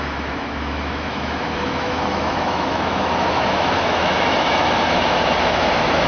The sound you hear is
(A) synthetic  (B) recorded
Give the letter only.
A